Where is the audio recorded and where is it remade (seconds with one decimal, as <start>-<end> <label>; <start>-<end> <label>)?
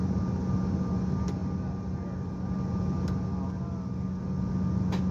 0.0-5.1 recorded